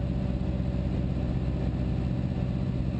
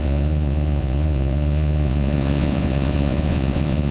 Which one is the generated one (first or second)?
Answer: second